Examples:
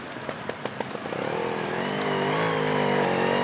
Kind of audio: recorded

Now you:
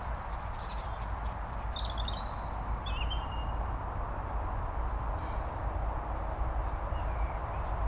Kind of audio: recorded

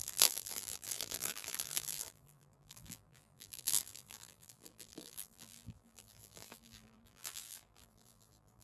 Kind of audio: remade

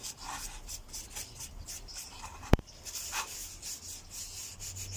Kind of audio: recorded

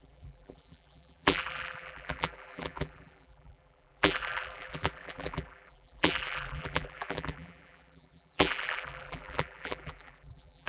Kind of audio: remade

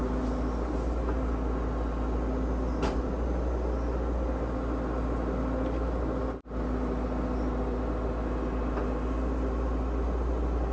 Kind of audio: recorded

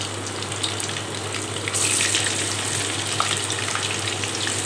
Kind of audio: recorded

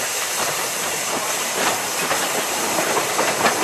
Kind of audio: remade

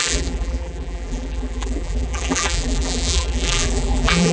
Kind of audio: remade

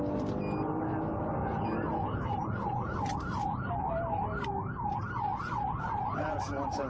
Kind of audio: recorded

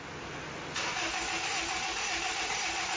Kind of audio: recorded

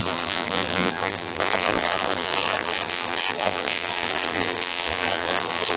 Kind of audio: remade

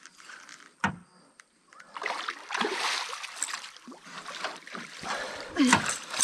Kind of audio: remade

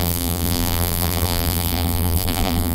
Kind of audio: remade